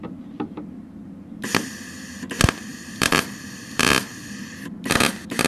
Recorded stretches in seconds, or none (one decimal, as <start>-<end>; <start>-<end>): 0.0-2.7